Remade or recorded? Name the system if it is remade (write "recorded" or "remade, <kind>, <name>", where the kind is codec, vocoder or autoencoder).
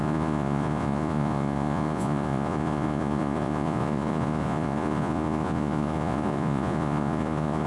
remade, vocoder, Vocos